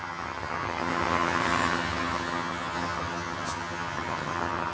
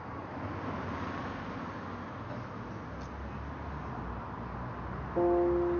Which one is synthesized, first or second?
first